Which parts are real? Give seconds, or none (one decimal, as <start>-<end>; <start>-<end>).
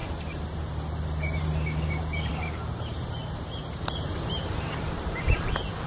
none